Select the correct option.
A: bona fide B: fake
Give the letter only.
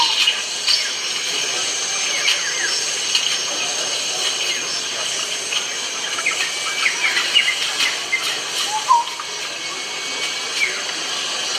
A